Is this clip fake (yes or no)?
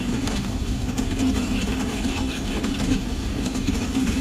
yes